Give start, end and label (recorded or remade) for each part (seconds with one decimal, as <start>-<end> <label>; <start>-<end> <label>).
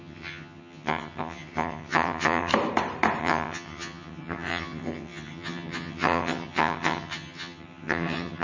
0.0-2.5 remade; 2.5-3.2 recorded; 3.2-8.4 remade